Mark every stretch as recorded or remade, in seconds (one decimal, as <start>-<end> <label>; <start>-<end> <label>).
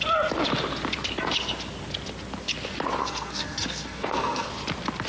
0.0-3.0 recorded; 3.0-4.5 remade; 4.5-5.1 recorded